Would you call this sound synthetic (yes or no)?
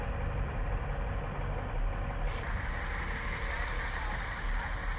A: no